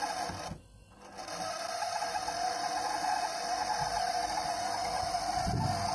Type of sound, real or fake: real